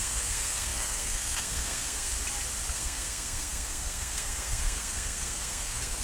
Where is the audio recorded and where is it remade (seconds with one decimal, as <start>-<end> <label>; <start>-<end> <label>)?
0.0-2.1 remade; 2.1-2.7 recorded; 2.7-6.0 remade